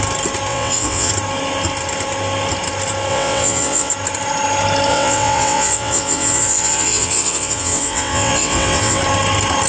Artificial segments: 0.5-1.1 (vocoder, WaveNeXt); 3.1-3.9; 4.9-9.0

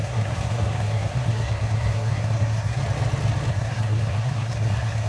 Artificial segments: 0.0-2.8 (codec, SNAC); 3.5-5.1

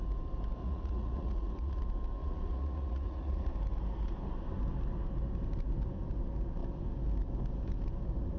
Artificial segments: 0.6-1.8 (vocoder, Vocos); 2.2-3.5

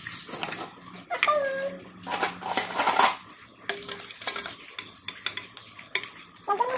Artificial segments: none

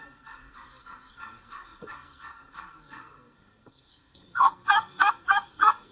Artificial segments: 0.0-5.9 (codec, SNAC)

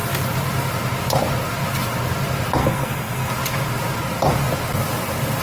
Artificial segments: 2.6-3.3 (codec, SNAC)

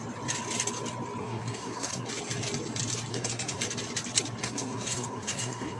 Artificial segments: 1.2-2.1 (codec, SNAC); 3.1-3.6; 4.4-5.8

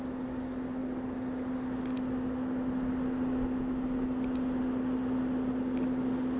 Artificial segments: none